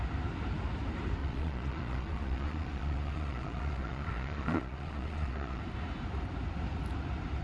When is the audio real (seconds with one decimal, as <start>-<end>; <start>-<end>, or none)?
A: 0.0-1.2; 5.6-7.4